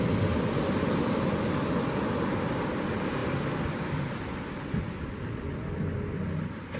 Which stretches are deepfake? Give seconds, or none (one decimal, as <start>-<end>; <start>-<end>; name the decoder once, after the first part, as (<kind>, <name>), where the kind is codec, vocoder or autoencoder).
3.2-4.2 (vocoder, BigVGAN v2)